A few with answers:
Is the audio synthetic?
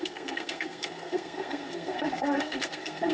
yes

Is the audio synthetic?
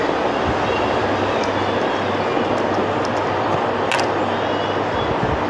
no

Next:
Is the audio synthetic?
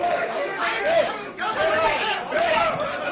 yes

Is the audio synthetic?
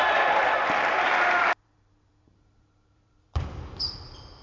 yes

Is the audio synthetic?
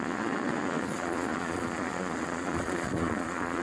yes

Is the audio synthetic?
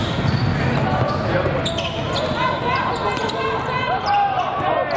no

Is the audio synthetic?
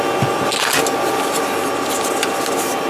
no